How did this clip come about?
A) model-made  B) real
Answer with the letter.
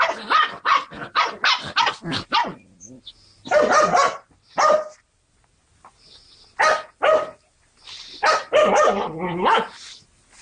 B